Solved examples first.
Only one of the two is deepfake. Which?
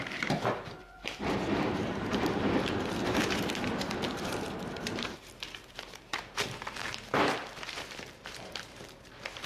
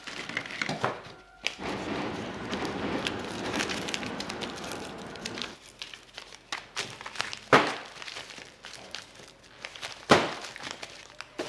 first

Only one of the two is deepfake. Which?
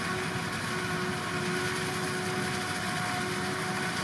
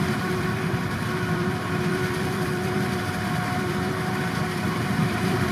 second